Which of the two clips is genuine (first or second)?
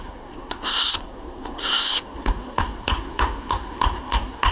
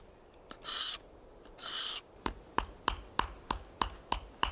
second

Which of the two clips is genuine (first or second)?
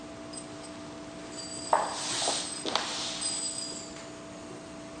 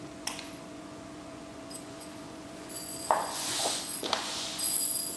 first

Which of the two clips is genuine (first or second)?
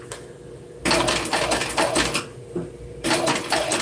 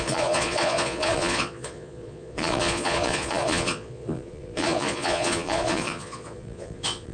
first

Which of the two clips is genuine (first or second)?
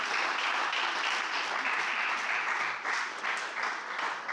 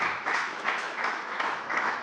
first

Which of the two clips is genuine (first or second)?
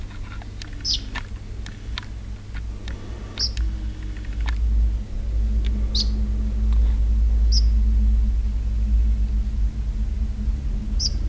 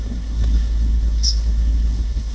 first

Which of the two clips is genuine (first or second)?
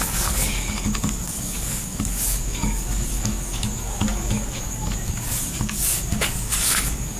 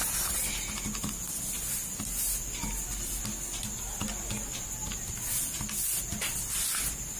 second